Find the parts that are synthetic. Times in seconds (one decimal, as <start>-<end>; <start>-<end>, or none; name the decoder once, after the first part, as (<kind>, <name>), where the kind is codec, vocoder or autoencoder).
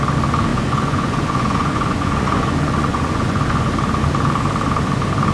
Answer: 0.5-3.7 (vocoder, Vocos)